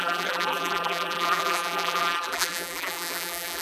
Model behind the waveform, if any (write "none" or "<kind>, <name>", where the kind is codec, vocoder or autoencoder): vocoder, BigVGAN v2